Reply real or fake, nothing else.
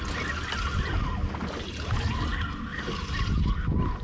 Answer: real